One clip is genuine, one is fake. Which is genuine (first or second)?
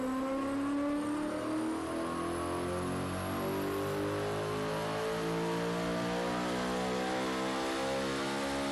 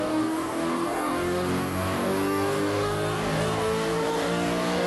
first